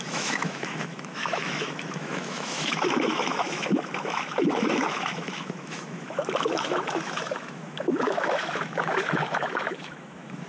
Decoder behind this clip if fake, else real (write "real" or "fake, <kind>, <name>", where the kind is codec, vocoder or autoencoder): fake, autoencoder, DAC-VAE